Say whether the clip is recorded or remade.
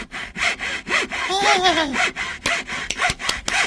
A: recorded